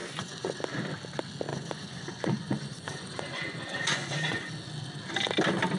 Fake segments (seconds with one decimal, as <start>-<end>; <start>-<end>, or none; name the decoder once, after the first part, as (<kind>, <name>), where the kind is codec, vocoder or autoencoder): 0.0-0.6 (vocoder, Vocos); 1.5-4.5